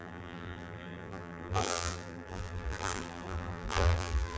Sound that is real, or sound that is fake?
fake